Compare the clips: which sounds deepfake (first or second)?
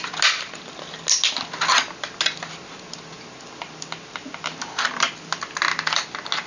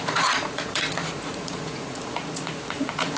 second